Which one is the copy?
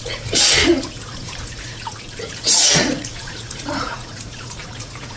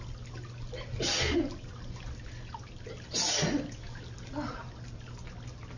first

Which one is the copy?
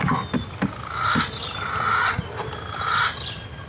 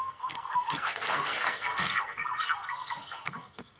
second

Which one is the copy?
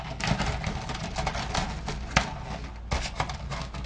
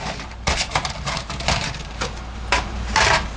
second